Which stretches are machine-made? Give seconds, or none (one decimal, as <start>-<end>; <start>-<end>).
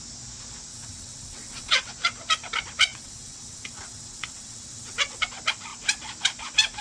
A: 0.7-1.9; 2.9-5.2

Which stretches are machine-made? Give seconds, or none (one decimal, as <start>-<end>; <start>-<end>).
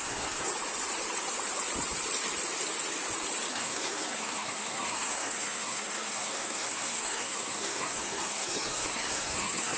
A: 0.0-0.5; 3.5-9.8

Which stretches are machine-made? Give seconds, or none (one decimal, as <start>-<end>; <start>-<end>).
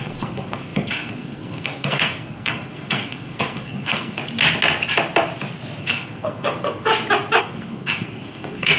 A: 0.0-4.2; 5.8-6.9; 7.4-8.8